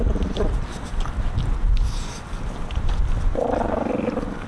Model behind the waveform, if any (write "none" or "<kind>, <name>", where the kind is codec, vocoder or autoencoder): none